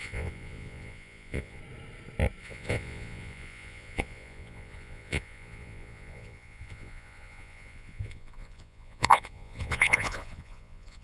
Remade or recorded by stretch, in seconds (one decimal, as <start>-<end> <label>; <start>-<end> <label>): 0.0-1.6 remade; 1.6-2.4 recorded; 2.4-11.0 remade